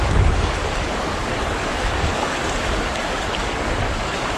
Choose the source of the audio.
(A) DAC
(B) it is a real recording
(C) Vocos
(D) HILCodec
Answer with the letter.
A